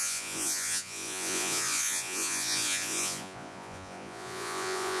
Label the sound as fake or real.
fake